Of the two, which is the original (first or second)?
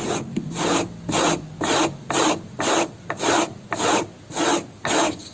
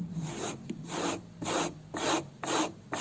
first